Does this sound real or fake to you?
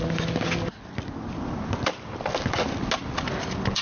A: real